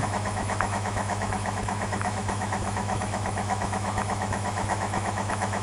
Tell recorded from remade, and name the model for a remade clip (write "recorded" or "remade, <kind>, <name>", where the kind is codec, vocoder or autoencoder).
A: remade, autoencoder, DAC-VAE